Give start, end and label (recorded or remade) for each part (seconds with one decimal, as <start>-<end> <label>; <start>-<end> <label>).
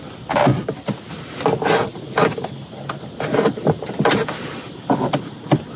0.0-5.8 recorded